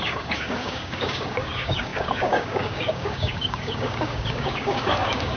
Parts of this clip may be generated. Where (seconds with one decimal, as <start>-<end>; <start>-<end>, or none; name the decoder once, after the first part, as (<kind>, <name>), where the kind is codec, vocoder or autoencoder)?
0.0-5.4 (codec, DAC)